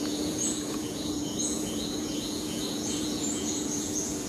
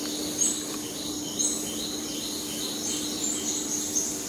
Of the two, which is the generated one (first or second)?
first